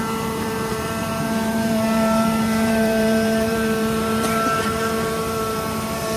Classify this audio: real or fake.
fake